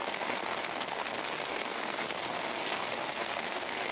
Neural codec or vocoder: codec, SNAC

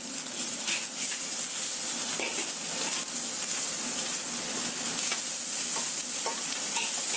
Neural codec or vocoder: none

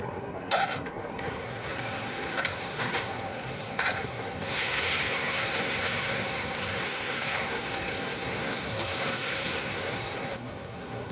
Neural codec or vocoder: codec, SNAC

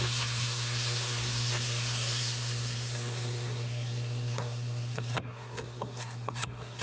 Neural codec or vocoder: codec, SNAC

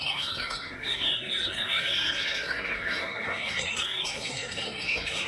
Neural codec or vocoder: codec, SNAC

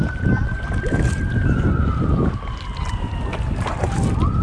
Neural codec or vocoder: none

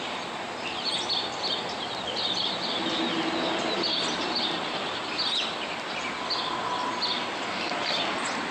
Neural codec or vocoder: none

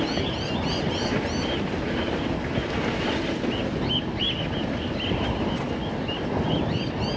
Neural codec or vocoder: none